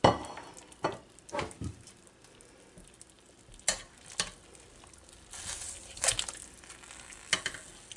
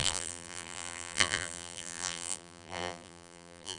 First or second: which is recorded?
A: first